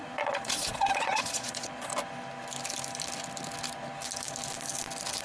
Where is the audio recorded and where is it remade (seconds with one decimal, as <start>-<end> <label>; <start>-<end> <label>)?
0.0-1.9 remade; 1.9-5.2 recorded